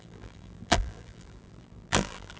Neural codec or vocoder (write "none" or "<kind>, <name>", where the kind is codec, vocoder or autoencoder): vocoder, BigVGAN v2